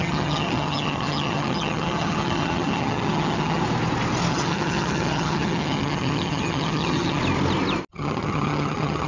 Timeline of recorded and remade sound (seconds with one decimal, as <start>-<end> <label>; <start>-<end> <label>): 0.0-3.6 remade; 3.6-4.3 recorded; 4.3-7.2 remade; 7.2-7.9 recorded; 7.9-9.1 remade